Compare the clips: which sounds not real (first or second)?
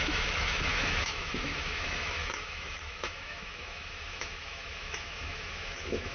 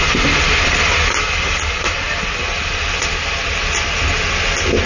first